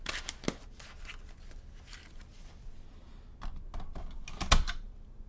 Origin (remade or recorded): recorded